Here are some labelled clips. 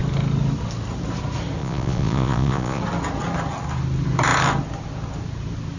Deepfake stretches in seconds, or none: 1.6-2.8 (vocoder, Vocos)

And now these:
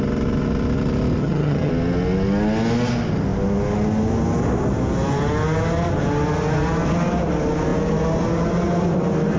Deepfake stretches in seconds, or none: 1.2-1.7 (vocoder, HiFi-GAN)